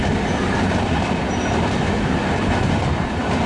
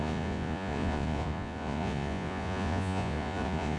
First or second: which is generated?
second